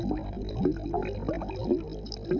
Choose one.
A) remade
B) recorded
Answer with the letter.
B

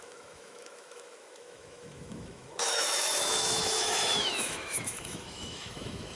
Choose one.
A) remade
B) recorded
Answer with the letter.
A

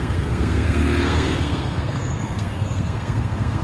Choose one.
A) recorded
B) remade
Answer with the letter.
B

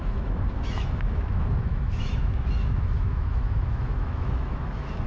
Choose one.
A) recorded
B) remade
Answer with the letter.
B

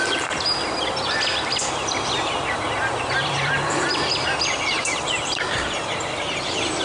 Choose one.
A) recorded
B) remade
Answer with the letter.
B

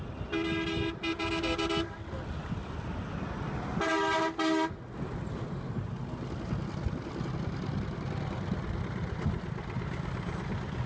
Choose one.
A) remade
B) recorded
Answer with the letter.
B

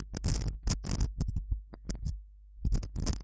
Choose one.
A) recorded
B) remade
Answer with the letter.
A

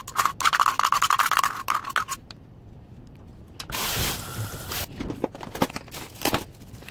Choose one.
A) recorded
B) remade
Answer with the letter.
A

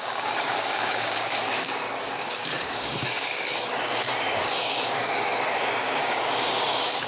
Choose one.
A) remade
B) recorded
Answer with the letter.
A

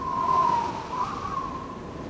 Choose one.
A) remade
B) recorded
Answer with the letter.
B